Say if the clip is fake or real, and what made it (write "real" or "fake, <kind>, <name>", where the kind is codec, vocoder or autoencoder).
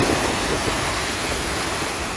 real